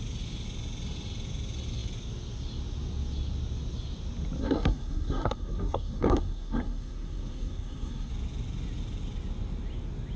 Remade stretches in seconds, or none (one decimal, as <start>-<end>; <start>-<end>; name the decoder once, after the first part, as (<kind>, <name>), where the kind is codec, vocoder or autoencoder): 4.4-8.1 (codec, SNAC)